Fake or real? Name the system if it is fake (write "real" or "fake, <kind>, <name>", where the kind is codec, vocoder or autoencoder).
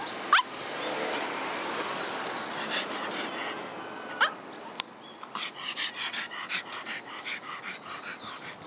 real